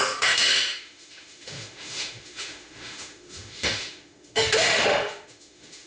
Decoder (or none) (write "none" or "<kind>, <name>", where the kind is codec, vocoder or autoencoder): autoencoder, DAC-VAE